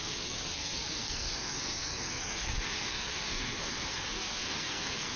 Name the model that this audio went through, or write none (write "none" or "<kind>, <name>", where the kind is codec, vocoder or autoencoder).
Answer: codec, SNAC